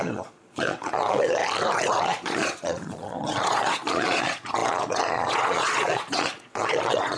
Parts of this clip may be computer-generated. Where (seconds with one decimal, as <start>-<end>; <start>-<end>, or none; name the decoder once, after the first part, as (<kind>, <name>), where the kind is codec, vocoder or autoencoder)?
0.0-1.4 (vocoder, Vocos); 2.0-7.2